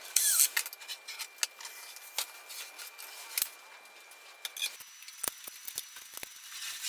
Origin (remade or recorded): recorded